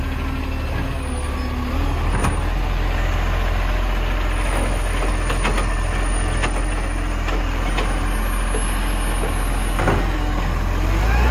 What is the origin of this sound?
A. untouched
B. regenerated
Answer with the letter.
A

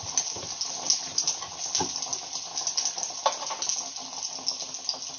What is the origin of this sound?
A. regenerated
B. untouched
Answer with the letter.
B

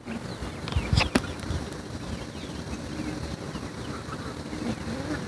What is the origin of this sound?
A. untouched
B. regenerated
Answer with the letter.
A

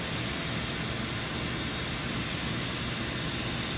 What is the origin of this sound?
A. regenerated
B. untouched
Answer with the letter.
B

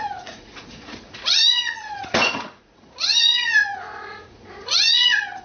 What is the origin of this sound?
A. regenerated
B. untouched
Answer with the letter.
A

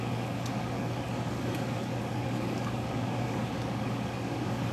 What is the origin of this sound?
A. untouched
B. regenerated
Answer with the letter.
B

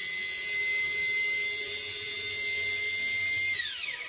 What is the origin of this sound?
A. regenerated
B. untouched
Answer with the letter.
B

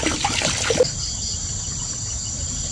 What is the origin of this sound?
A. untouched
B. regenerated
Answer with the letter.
A